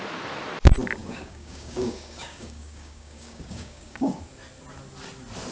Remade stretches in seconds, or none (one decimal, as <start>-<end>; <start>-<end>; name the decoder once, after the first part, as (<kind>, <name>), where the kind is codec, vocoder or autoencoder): 1.0-4.2 (codec, DAC)